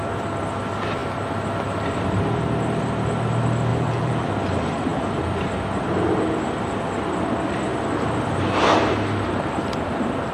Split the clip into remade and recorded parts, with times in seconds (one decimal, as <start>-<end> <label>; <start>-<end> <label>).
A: 0.0-3.7 recorded; 3.7-4.3 remade; 4.3-10.3 recorded